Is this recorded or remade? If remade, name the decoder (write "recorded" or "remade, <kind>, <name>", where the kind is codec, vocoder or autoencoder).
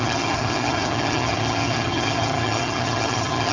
remade, vocoder, HiFi-GAN